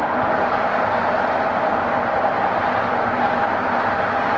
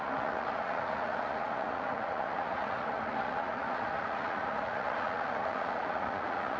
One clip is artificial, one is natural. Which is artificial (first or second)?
second